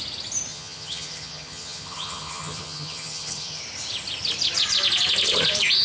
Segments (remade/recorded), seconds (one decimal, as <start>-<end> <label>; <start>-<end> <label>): 0.0-0.5 recorded; 0.5-3.6 remade; 3.6-5.8 recorded